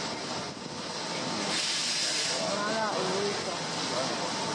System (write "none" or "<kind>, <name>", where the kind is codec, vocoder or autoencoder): none